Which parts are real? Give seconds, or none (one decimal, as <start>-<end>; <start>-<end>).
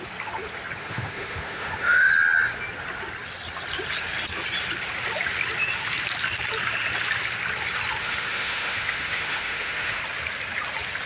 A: 0.0-0.8; 2.1-8.0; 10.0-11.1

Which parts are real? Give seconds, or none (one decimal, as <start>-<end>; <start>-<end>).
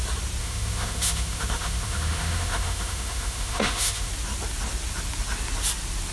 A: 0.0-0.4; 4.1-6.1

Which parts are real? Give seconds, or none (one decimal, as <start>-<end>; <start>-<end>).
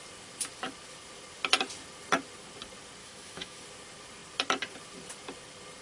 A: 0.0-3.0; 3.6-5.8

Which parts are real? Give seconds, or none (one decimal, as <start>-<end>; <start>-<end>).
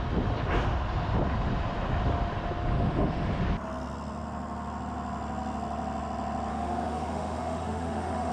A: 0.0-2.7; 3.4-6.5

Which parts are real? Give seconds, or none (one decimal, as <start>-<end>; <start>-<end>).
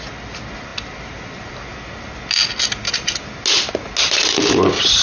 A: 0.0-5.0